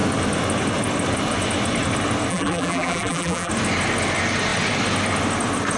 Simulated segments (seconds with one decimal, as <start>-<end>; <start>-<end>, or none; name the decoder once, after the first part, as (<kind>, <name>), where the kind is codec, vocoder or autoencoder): 2.3-3.5 (vocoder, BigVGAN v2)

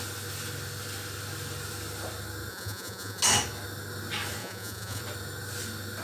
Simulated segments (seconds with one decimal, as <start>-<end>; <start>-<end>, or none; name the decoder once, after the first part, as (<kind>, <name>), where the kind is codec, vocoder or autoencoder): 2.5-3.2 (vocoder, Vocos); 4.4-5.0